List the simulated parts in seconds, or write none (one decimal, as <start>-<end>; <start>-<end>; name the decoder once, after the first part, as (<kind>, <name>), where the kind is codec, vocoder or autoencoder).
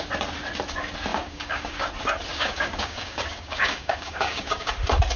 1.1-1.9 (codec, DAC); 2.3-4.7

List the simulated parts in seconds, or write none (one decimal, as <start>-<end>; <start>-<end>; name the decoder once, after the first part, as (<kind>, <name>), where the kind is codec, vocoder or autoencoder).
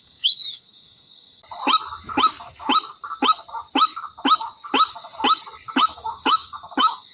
0.0-1.4 (codec, DAC); 5.7-7.1